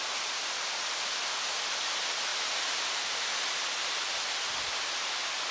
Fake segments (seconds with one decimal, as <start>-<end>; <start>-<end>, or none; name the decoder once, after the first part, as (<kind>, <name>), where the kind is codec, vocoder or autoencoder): none